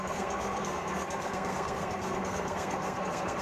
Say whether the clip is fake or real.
fake